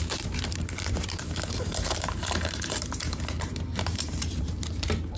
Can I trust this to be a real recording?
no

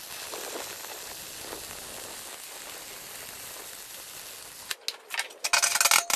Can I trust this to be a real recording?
yes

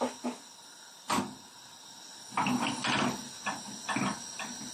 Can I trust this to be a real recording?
yes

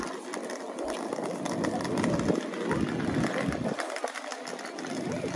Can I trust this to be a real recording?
yes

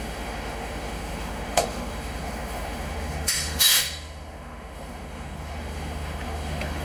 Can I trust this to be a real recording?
no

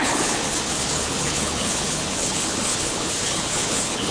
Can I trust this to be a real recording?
no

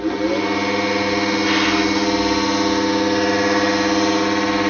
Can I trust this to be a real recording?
yes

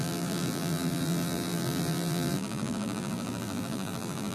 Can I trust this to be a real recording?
no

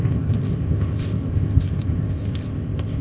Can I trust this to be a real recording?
no